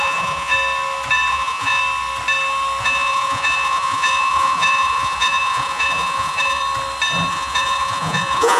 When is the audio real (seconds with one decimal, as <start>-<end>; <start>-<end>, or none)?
0.5-1.3; 1.8-2.8; 6.6-7.3